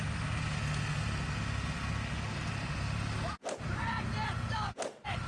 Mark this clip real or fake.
real